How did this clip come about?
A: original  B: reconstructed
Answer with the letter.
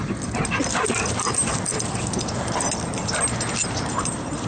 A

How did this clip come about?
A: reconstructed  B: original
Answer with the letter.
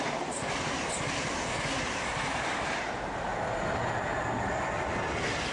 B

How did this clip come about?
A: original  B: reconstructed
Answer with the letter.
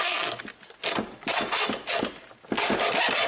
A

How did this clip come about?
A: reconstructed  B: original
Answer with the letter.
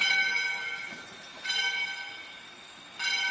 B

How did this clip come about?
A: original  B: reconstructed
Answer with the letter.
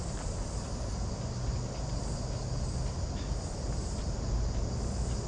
A